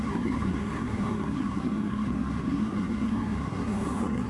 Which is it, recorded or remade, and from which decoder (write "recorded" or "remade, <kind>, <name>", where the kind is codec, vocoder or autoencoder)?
remade, codec, SNAC